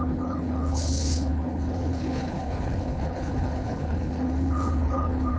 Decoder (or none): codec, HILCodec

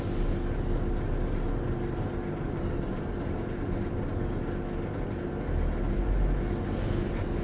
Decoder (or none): none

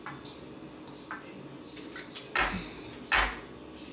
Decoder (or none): none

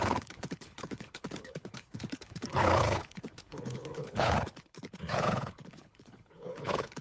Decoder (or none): codec, HILCodec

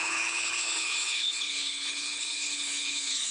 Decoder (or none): codec, HILCodec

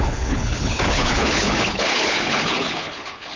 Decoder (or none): codec, HILCodec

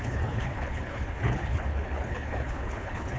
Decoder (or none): codec, HILCodec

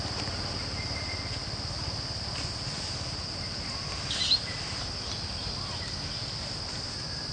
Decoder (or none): none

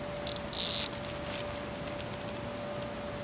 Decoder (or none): none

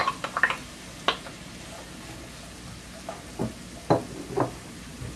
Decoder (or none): none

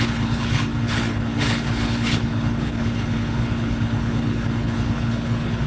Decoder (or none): codec, HILCodec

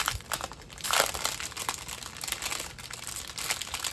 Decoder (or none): none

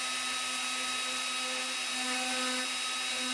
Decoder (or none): none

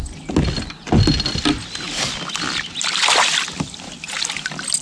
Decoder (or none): none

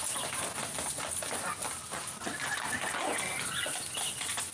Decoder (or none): none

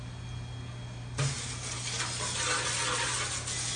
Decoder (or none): none